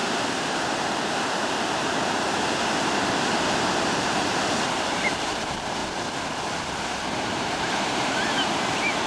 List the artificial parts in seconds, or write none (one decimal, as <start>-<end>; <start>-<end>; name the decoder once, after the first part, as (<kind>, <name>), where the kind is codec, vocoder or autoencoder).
4.5-5.8 (vocoder, BigVGAN v2); 6.7-9.1